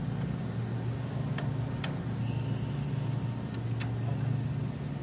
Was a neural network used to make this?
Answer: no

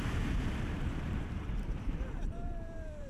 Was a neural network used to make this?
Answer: yes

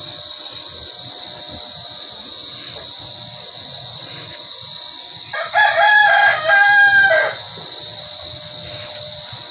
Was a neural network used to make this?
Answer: yes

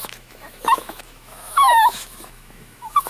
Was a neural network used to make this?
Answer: yes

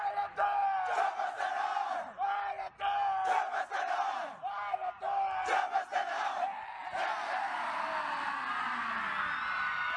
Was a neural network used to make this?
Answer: no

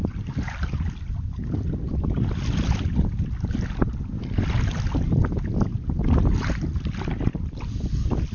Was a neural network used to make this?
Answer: no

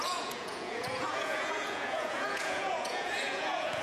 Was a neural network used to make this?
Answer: yes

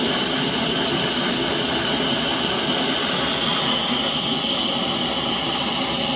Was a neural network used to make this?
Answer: yes